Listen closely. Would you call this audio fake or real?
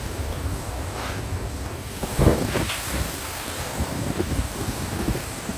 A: fake